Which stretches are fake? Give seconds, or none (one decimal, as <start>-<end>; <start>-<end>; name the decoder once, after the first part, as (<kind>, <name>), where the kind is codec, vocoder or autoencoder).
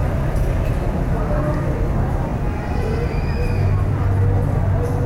0.0-0.7 (vocoder, BigVGAN v2)